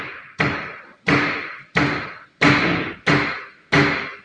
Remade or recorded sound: recorded